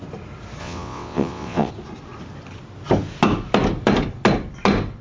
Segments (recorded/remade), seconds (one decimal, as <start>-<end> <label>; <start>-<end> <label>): 0.0-0.6 recorded; 0.6-1.7 remade; 1.7-5.0 recorded